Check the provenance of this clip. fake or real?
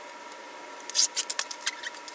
real